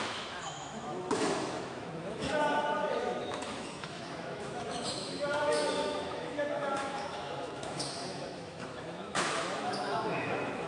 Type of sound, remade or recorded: remade